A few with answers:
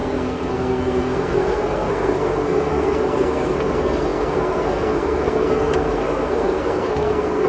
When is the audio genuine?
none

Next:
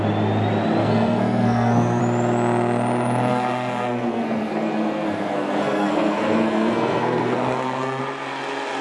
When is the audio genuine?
0.0-0.8; 2.0-3.3; 8.0-8.8

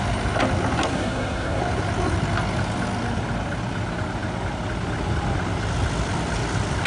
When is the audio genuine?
0.0-0.9; 1.6-6.9